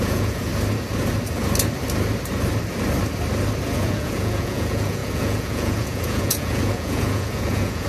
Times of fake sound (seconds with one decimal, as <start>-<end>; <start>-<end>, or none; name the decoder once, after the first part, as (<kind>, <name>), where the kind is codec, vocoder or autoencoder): 0.0-0.5 (vocoder, Vocos); 3.6-7.9